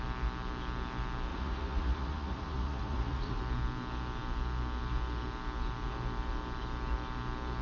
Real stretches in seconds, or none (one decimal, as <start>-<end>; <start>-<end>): 0.0-1.3; 3.4-7.6